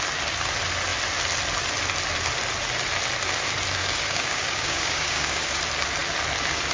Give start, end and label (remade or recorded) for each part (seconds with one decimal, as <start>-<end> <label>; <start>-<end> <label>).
0.0-3.8 recorded; 3.8-5.5 remade; 5.5-6.7 recorded